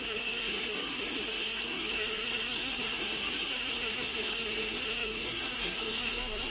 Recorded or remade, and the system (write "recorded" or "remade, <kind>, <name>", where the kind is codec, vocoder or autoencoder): remade, codec, SNAC